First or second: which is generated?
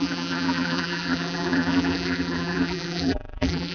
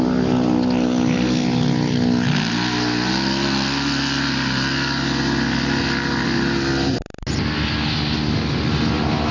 first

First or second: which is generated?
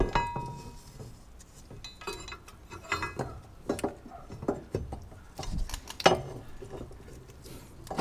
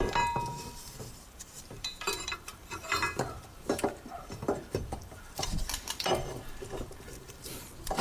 second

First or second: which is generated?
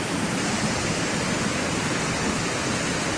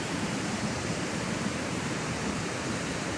second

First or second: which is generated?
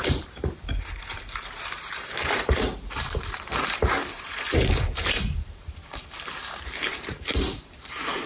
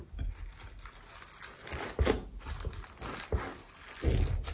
first